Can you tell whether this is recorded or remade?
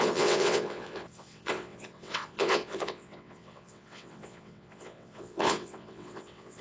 remade